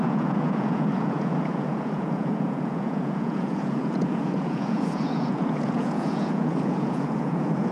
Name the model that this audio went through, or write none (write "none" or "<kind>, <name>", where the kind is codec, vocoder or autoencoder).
vocoder, Vocos